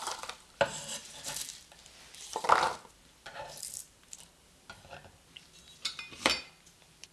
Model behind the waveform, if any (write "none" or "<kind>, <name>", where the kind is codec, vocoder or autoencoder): none